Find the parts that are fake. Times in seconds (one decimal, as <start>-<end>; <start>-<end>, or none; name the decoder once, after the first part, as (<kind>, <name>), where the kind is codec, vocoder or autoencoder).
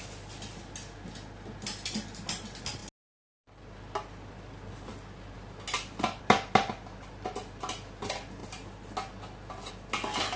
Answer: none